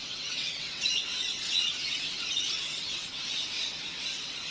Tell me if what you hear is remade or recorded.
remade